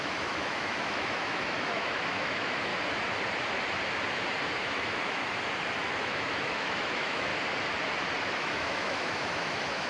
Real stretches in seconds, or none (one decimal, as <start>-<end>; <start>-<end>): 2.7-4.6; 5.2-6.0; 7.3-8.4

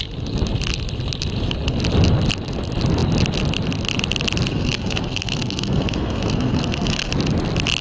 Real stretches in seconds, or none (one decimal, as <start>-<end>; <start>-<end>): 0.0-4.5; 7.1-7.8

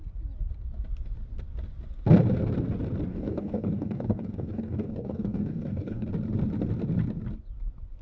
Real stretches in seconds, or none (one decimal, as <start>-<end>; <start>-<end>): 0.0-3.1; 6.1-8.0

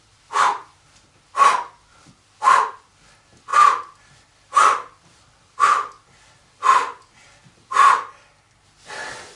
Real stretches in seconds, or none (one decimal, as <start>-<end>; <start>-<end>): 0.0-9.4

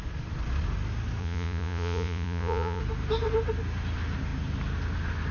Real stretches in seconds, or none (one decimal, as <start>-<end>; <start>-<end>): 0.0-1.2; 2.8-5.3